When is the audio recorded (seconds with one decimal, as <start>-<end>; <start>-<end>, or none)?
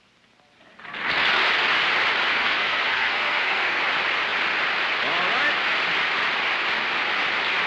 0.0-2.3; 3.8-7.7